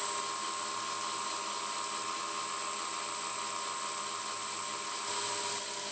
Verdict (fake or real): real